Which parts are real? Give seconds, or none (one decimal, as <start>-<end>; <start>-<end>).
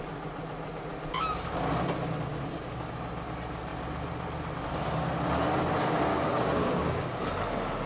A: 0.0-2.3; 3.0-6.1; 7.2-7.9